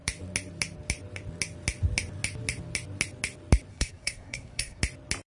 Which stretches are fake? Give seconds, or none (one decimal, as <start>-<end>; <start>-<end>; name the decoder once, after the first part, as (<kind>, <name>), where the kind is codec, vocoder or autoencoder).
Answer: 3.7-4.8 (codec, SNAC)